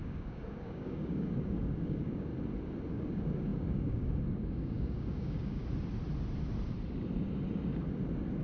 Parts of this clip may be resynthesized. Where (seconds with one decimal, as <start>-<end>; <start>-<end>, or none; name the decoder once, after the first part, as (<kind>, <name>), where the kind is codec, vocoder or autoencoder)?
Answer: 0.0-2.3 (codec, DAC); 2.9-5.6